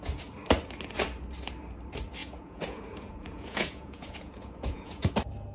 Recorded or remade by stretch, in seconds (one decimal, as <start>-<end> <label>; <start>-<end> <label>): 0.0-2.2 recorded; 2.2-5.1 remade; 5.1-5.5 recorded